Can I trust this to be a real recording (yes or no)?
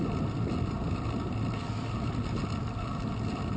yes